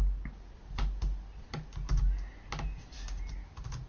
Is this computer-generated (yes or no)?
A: no